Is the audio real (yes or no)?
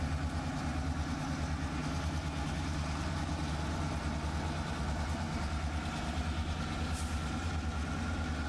yes